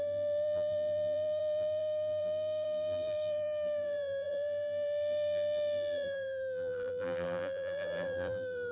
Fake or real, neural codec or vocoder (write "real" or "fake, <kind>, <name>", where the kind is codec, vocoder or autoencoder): fake, vocoder, BigVGAN v2